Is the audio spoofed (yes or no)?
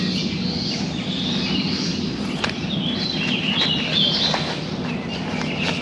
no